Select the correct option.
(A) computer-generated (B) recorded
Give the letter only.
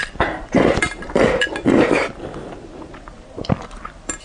B